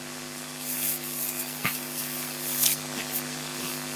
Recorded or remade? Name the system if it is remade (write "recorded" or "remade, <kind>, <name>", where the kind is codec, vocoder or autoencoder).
remade, codec, SNAC